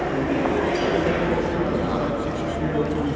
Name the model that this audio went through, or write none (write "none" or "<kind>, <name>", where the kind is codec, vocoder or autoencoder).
none